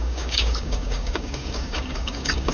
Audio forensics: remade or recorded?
remade